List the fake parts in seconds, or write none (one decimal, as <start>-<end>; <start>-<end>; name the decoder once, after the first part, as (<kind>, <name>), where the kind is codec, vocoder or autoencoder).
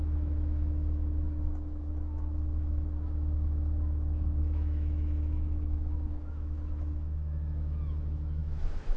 0.0-9.0 (autoencoder, DAC-VAE)